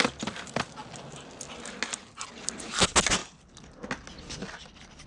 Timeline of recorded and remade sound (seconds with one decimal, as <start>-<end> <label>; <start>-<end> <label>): 0.0-5.1 recorded